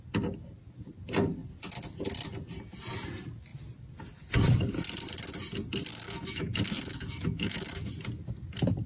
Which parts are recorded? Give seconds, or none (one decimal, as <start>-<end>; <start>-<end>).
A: 0.0-5.9; 7.9-8.9